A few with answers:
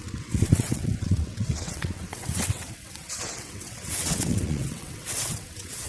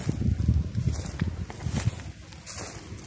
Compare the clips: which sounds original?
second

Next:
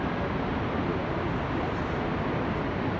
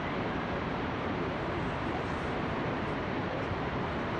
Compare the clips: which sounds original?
first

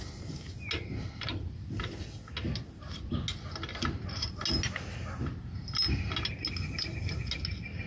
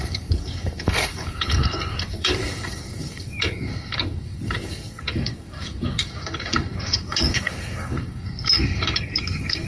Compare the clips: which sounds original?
first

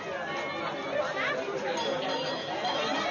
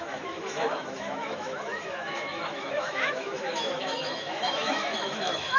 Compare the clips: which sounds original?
first